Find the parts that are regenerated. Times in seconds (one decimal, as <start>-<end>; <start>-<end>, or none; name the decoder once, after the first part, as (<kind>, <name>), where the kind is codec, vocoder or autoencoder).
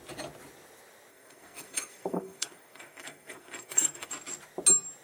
1.1-4.1 (codec, SNAC)